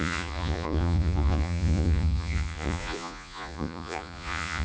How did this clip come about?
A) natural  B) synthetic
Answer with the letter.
B